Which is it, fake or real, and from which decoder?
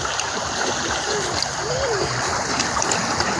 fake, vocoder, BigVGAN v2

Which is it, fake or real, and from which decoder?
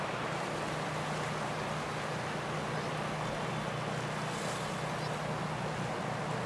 real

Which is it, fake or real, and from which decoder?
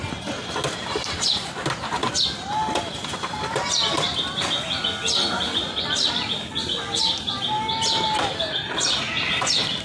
real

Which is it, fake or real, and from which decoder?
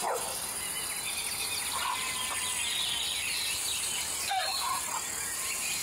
real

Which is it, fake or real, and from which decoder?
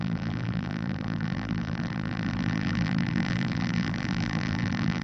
fake, vocoder, BigVGAN v2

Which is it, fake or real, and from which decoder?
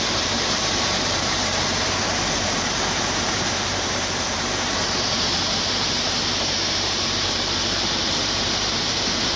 fake, vocoder, BigVGAN v2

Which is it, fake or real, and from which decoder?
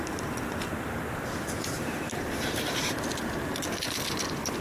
fake, vocoder, BigVGAN v2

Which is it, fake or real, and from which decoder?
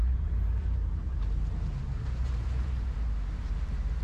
fake, vocoder, BigVGAN v2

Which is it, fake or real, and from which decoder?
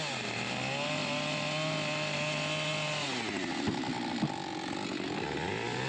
real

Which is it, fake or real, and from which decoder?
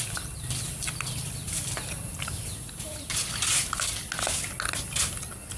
real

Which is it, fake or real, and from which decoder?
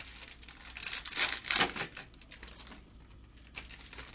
real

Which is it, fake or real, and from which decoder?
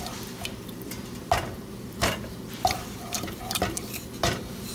fake, vocoder, BigVGAN v2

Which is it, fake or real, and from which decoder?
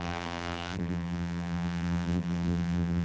fake, vocoder, BigVGAN v2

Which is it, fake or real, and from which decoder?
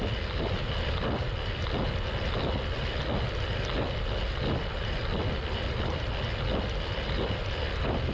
real